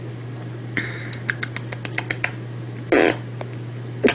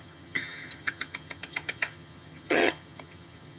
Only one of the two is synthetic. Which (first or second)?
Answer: second